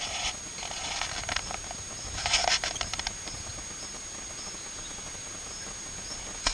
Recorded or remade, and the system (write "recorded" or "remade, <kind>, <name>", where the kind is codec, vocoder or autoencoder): recorded